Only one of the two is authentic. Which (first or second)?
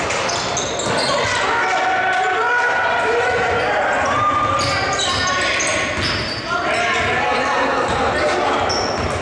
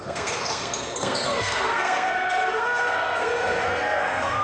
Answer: first